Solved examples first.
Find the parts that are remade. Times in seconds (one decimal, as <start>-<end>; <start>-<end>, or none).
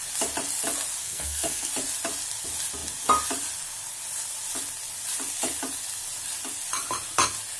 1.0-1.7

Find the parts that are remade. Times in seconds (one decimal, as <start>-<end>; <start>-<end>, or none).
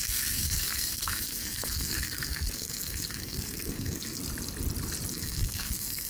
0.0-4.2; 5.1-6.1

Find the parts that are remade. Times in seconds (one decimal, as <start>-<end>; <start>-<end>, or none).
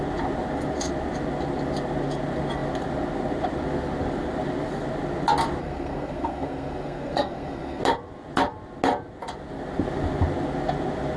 5.6-7.8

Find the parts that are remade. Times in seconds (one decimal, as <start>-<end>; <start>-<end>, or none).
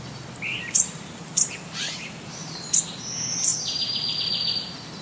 0.5-2.7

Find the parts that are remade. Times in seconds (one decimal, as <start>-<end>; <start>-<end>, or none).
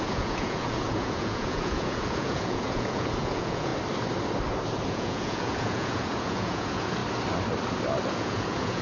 0.0-3.7; 4.9-7.0; 8.1-8.8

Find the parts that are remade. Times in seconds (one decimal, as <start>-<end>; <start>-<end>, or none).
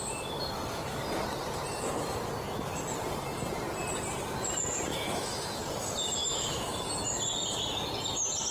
4.9-5.6; 6.2-6.8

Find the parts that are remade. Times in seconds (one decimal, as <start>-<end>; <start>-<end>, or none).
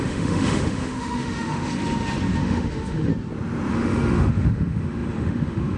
0.0-1.7; 2.4-3.1; 3.7-5.8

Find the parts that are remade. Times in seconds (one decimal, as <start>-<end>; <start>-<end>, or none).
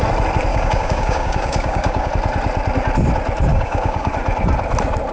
0.5-2.1; 3.5-4.1